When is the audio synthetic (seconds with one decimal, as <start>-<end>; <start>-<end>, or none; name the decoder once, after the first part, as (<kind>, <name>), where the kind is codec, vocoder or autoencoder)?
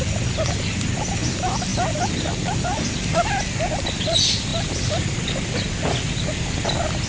0.0-1.7 (vocoder, BigVGAN v2); 2.3-7.1